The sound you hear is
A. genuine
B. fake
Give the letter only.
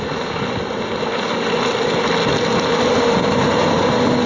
A